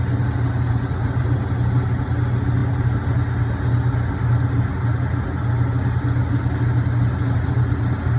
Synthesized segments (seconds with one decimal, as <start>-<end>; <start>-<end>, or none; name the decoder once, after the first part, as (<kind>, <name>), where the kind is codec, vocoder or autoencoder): none